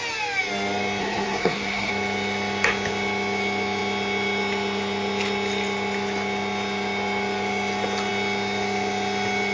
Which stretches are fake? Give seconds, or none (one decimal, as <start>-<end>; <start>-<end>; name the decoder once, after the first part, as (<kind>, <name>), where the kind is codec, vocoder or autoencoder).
1.0-1.9 (codec, SNAC)